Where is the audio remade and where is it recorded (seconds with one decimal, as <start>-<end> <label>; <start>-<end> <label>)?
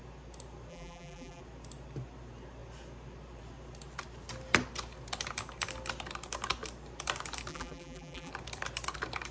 0.0-0.7 recorded; 0.7-1.4 remade; 1.4-7.5 recorded; 7.5-8.3 remade; 8.3-9.3 recorded